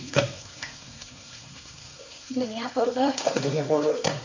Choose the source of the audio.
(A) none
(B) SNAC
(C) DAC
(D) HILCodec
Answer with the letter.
B